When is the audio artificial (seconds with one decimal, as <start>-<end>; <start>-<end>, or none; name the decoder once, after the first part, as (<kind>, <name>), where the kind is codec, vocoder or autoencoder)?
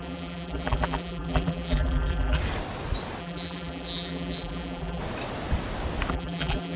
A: 0.0-2.4 (vocoder, BigVGAN v2); 3.2-5.0; 6.1-6.8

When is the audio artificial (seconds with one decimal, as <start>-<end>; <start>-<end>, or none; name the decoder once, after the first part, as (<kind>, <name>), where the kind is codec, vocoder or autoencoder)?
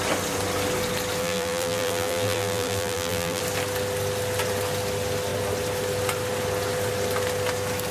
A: 1.2-3.4 (vocoder, BigVGAN v2)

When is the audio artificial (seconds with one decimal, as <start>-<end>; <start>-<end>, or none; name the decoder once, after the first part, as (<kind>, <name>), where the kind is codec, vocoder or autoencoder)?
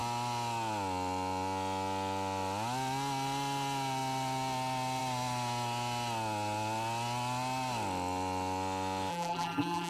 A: 9.1-9.9 (vocoder, BigVGAN v2)